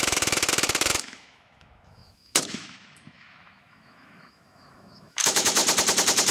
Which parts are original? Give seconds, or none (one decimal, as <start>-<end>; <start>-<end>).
5.6-6.3